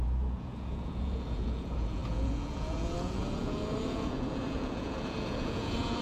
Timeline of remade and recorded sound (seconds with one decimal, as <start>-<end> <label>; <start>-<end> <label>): 0.0-6.0 remade